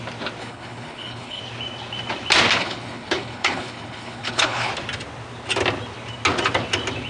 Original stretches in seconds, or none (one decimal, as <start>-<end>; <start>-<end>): 0.0-0.4; 1.4-2.6; 4.7-7.1